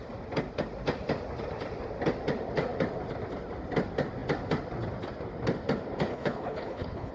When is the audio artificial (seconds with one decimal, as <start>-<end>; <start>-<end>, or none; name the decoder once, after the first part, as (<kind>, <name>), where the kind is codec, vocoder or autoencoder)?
6.1-7.1 (codec, HILCodec)